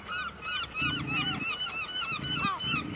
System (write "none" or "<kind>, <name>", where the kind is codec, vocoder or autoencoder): none